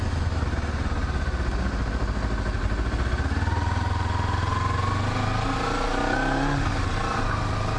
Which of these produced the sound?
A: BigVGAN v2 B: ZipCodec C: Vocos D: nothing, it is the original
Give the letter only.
D